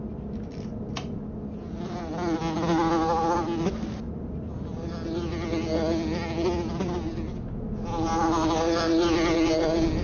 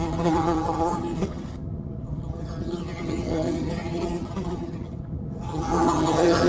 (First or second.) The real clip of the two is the first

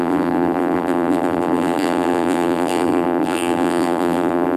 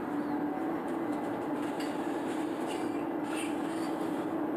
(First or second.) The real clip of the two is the second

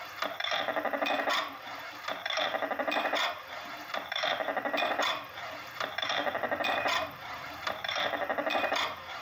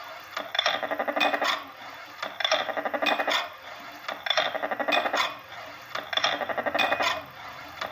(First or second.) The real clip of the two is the second